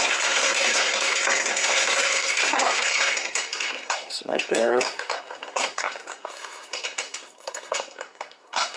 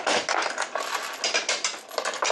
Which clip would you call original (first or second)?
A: second